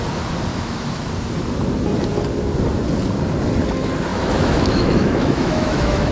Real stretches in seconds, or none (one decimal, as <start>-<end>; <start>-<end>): 0.0-0.5; 1.1-4.1